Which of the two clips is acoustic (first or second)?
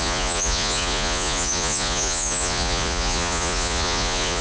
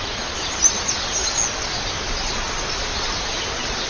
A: second